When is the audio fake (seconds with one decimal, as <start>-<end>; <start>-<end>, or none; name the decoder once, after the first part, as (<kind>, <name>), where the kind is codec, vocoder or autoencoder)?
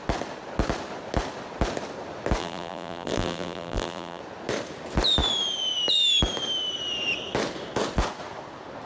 2.4-4.2 (vocoder, BigVGAN v2)